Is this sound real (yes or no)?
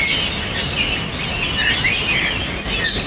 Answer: yes